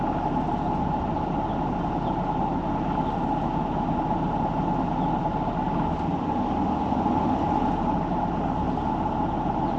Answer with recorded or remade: recorded